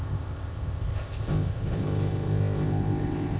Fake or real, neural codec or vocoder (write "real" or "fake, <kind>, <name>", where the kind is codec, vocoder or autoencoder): fake, codec, ZipCodec